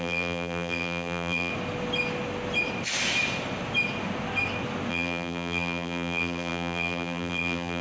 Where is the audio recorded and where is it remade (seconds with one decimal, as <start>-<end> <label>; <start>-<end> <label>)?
0.0-1.5 remade; 1.5-4.9 recorded; 4.9-7.8 remade